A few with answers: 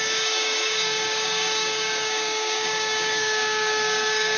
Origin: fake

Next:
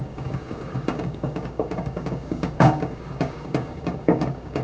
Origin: fake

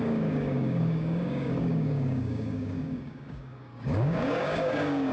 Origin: fake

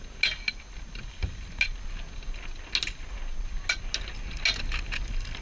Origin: real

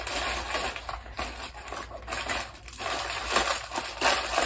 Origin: real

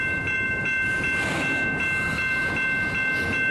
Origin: real